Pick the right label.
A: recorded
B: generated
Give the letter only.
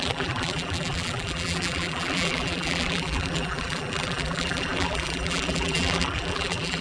B